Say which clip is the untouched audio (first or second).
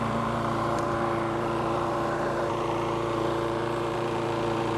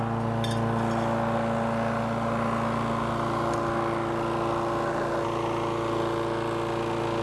second